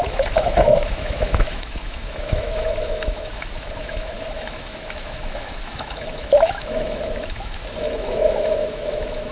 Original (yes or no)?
no